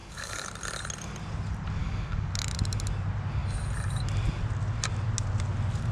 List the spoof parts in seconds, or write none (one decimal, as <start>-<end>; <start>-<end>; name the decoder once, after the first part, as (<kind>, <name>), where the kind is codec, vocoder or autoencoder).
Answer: 0.0-0.5 (codec, DAC); 1.8-2.3